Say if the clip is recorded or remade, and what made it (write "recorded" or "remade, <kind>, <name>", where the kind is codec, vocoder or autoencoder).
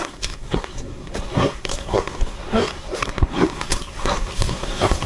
remade, codec, SNAC